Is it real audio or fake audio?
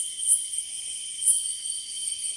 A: fake